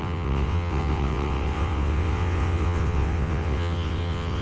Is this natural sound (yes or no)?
no